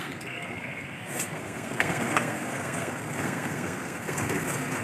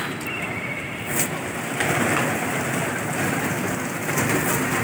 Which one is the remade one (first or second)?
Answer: first